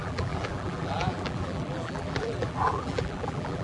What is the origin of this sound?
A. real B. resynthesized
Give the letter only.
B